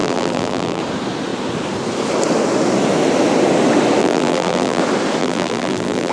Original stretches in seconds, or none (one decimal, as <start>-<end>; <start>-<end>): 0.8-4.0; 4.8-5.2